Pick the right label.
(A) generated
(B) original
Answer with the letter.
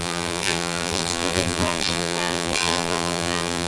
A